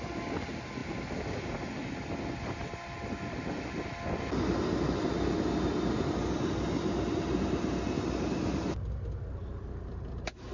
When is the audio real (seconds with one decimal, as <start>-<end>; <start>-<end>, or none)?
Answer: 0.0-10.5